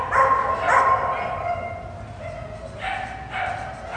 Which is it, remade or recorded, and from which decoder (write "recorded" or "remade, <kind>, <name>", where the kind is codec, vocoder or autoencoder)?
recorded